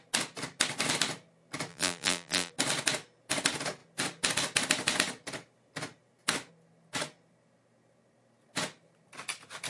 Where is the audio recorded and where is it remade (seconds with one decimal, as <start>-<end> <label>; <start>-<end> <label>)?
0.0-1.7 recorded; 1.7-2.5 remade; 2.5-9.7 recorded